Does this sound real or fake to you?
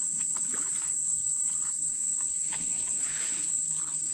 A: fake